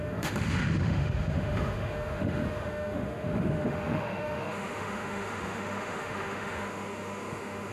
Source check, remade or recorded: remade